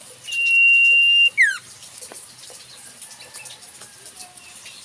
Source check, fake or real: real